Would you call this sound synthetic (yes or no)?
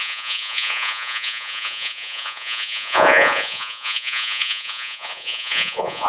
yes